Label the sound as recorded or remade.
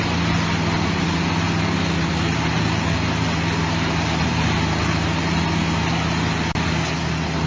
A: recorded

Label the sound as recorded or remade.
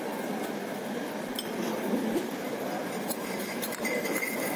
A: remade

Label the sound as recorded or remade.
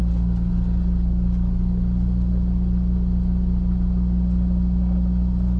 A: recorded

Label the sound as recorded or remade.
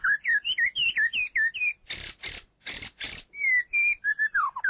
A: remade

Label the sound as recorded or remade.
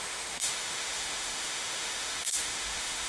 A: remade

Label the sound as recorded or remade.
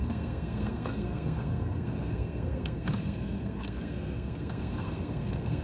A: remade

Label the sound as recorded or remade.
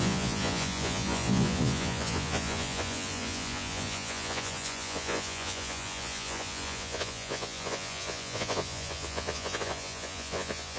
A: remade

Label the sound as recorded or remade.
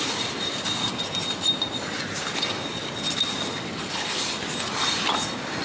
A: recorded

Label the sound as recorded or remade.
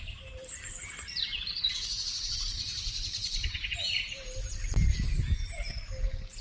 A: remade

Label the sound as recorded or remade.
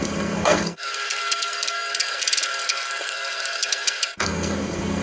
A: remade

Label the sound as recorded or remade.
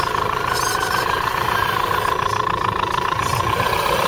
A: recorded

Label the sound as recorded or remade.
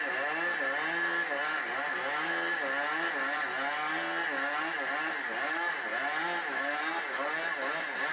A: recorded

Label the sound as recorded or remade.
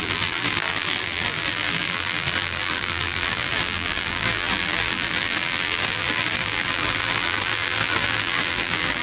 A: remade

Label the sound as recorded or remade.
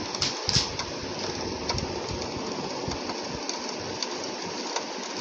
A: recorded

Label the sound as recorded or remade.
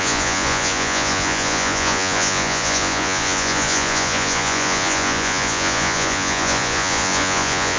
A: remade